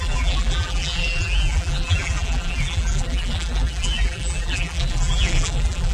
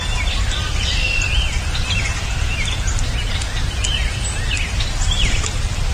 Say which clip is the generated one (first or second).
first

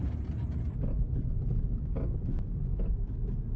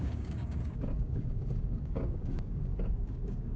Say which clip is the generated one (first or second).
second